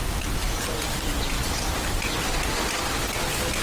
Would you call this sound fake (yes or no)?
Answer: no